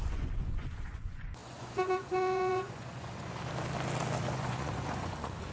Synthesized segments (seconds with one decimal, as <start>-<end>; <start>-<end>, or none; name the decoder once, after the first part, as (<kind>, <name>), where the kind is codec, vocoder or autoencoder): 0.0-3.4 (vocoder, Vocos); 4.3-5.5